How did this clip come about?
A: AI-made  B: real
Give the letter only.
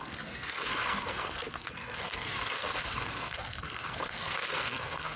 A